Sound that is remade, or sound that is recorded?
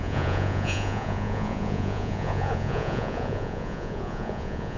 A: remade